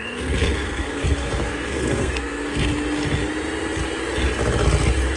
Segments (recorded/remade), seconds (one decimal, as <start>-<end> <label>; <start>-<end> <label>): 0.0-2.7 remade; 2.7-5.2 recorded